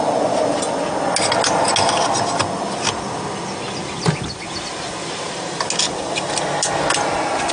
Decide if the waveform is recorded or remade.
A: recorded